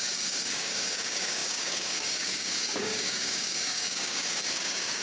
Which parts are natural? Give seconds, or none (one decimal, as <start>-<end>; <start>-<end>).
none